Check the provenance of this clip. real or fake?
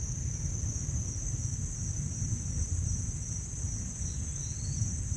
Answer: real